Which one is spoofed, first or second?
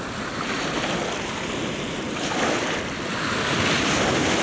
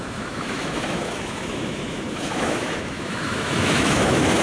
second